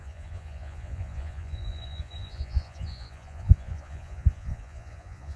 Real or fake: fake